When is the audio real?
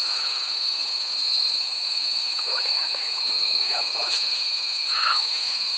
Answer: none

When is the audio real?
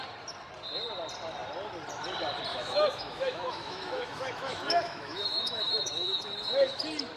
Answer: 0.0-2.5; 6.8-7.2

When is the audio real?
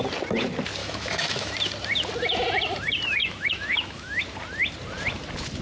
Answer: 0.0-0.8; 1.5-3.2; 4.2-5.6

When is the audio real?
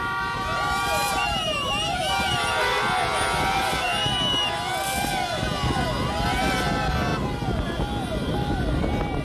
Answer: 0.0-9.2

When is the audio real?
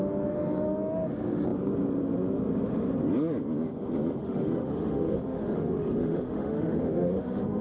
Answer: 0.0-4.2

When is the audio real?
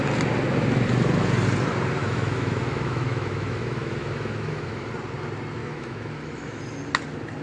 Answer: 0.0-2.0; 4.9-5.6; 6.6-7.4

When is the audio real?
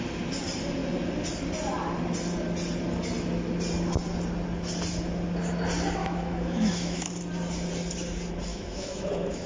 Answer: 0.0-6.0; 7.1-8.5